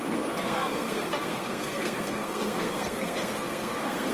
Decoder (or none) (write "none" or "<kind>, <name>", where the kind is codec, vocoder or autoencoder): codec, SNAC